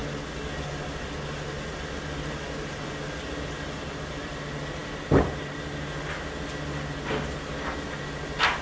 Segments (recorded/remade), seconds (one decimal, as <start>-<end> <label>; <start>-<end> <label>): 0.0-8.6 recorded